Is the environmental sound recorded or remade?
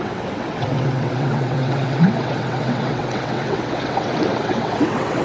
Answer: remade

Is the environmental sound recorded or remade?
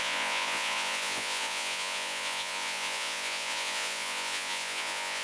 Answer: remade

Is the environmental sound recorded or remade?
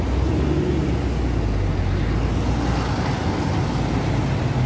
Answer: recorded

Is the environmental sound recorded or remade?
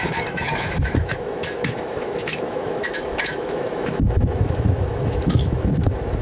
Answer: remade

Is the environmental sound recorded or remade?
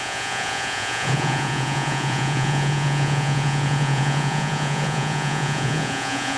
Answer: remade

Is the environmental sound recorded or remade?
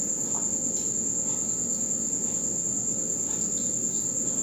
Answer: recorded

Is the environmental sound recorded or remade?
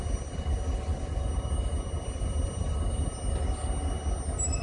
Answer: recorded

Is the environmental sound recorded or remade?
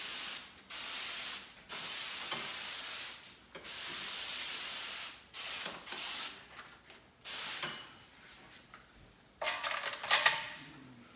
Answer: recorded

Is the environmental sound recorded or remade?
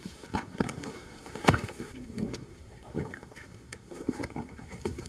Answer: remade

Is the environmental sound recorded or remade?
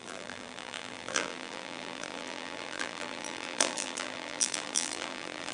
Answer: remade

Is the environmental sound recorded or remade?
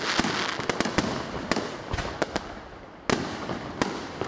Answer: recorded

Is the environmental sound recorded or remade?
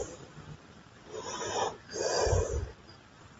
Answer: recorded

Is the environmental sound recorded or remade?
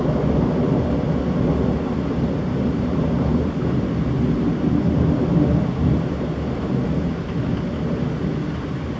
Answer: recorded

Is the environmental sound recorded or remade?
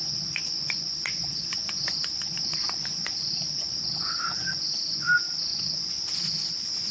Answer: remade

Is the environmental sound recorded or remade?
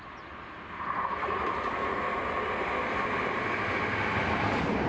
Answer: recorded